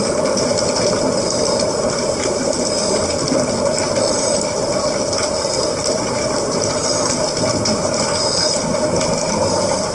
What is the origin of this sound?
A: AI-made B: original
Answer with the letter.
B